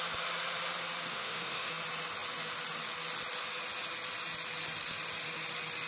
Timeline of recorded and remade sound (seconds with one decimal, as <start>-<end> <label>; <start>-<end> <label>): 0.0-1.1 recorded; 1.1-1.7 remade; 1.7-5.9 recorded